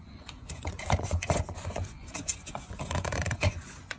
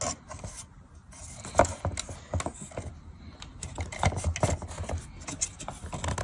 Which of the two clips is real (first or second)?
second